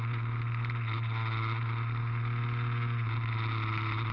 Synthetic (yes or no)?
no